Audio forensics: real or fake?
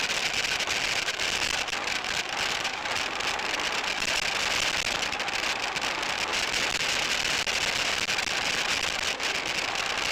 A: real